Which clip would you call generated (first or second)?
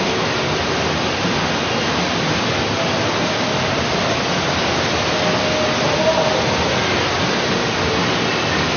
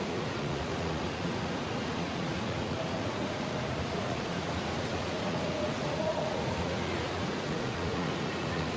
second